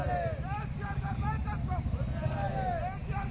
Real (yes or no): yes